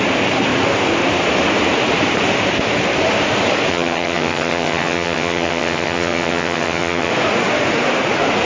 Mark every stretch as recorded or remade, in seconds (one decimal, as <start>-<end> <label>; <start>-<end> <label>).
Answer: 0.0-3.7 recorded; 3.7-7.1 remade; 7.1-8.5 recorded